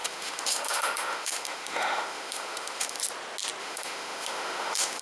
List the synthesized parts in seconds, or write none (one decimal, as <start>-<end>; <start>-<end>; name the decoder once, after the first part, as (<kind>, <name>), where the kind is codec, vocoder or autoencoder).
0.0-3.0 (autoencoder, DAC-VAE); 3.6-5.0